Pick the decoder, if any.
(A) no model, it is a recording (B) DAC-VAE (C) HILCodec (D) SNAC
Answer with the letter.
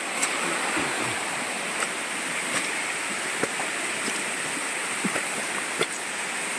A